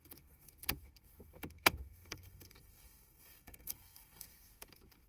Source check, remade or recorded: remade